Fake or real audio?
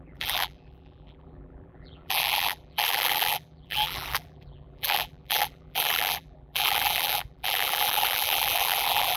fake